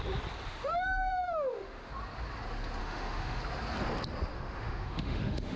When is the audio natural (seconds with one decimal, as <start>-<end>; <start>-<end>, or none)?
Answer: 0.0-0.5; 1.9-2.8; 3.4-4.3